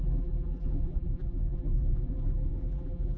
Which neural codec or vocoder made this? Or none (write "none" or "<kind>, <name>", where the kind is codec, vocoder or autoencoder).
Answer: vocoder, BigVGAN v2